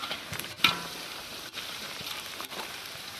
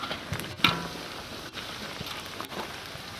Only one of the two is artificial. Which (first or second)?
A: first